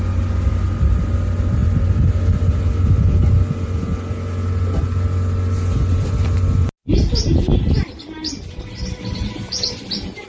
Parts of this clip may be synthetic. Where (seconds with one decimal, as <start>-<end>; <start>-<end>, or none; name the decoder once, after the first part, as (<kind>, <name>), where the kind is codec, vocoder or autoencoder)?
none